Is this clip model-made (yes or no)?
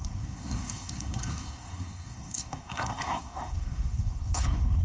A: yes